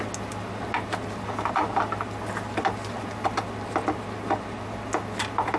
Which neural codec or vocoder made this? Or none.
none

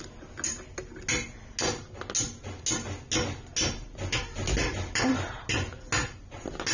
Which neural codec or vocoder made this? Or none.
none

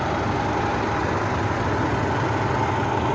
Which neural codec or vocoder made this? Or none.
none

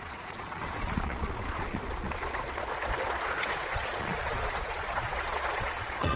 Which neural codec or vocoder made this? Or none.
vocoder, Vocos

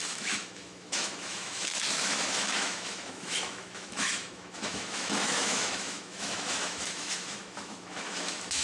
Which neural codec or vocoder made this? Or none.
autoencoder, DAC-VAE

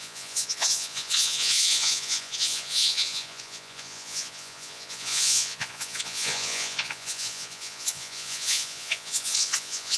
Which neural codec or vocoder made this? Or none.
vocoder, Vocos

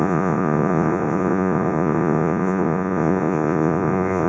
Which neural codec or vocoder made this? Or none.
vocoder, Vocos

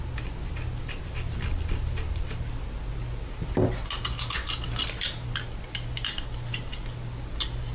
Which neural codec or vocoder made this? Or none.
none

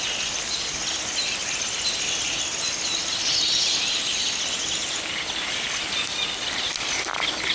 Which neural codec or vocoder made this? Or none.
none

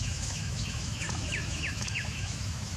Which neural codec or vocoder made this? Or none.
autoencoder, DAC-VAE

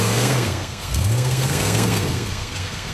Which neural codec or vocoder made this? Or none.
codec, SNAC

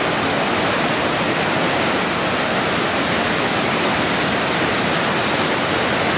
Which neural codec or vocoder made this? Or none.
none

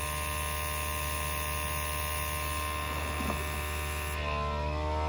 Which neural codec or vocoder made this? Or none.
none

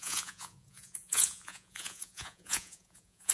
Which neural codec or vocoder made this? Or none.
vocoder, Vocos